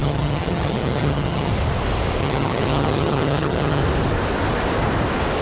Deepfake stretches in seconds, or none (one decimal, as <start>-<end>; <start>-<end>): 0.0-1.5; 2.2-3.8